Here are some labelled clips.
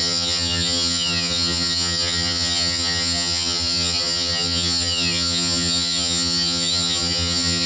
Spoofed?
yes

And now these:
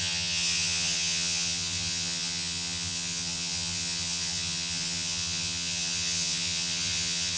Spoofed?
yes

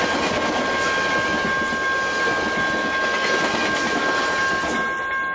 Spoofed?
no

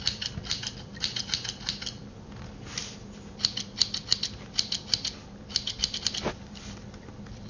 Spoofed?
no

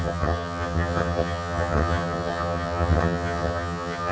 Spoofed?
yes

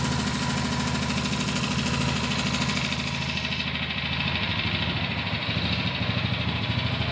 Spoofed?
no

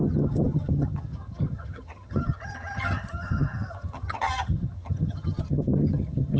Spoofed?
yes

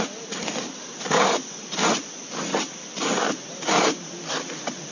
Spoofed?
no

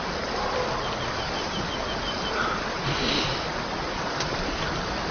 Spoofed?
no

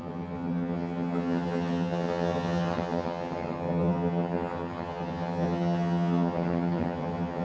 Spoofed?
yes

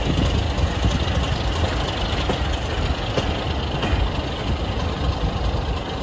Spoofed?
no